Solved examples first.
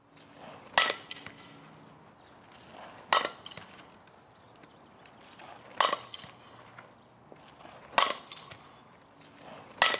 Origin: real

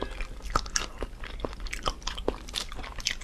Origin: real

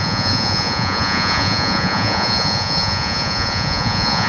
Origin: fake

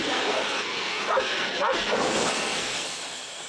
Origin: fake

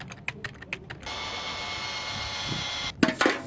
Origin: real